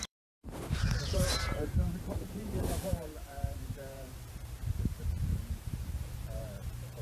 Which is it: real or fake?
fake